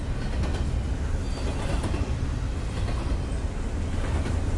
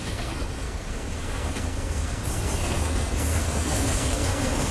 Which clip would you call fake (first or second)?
second